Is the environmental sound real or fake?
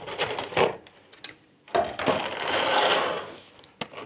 real